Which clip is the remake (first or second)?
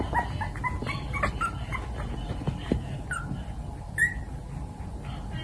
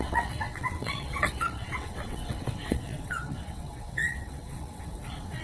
second